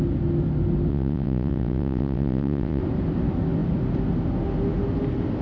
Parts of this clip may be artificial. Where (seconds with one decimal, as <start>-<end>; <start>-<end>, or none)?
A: 0.9-2.8